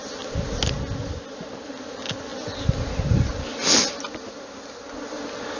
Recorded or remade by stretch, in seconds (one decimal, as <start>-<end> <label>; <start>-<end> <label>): 0.0-5.6 recorded